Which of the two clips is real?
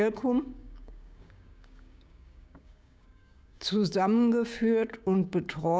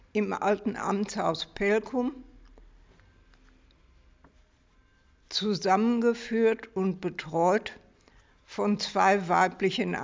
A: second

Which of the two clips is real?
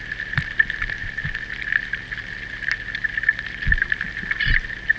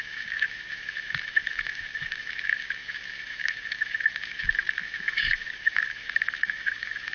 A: first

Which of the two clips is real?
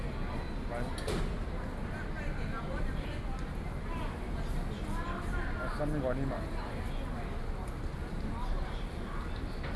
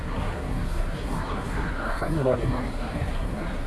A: first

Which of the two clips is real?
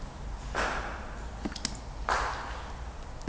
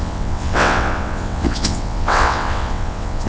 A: first